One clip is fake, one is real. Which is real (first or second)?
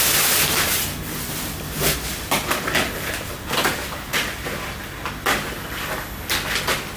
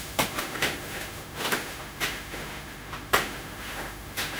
first